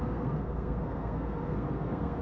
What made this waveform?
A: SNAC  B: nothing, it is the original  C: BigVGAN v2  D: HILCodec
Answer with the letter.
A